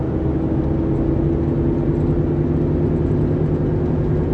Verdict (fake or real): real